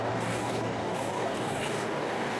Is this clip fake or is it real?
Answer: fake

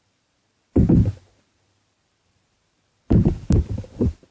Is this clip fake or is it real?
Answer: fake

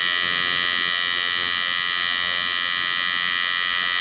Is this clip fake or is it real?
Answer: real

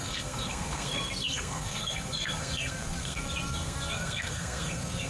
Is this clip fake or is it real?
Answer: fake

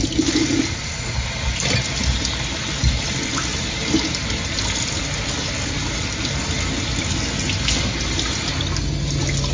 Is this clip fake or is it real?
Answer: real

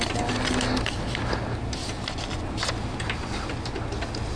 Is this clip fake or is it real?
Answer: real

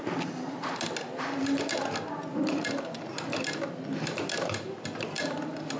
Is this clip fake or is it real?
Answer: real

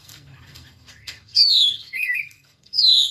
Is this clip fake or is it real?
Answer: fake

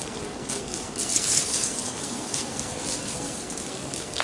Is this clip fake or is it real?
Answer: fake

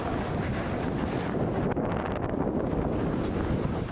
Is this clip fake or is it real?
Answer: real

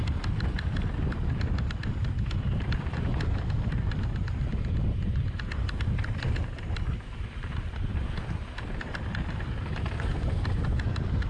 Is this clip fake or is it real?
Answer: fake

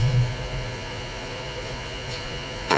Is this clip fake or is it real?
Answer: fake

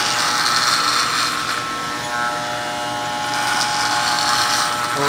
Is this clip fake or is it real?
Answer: real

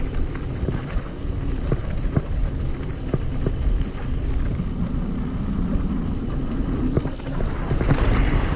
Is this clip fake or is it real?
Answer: real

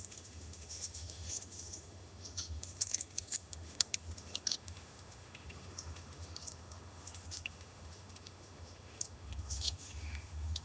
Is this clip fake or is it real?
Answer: fake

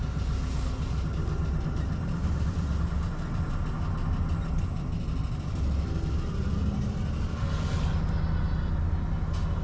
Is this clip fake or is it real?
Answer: real